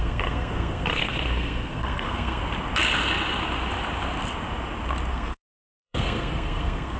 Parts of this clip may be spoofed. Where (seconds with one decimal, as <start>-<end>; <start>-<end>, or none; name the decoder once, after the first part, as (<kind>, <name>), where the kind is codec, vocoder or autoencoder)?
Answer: 0.0-2.4 (codec, SNAC); 5.1-7.0